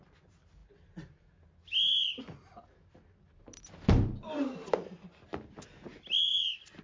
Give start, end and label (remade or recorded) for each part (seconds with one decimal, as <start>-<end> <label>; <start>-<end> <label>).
0.0-6.8 recorded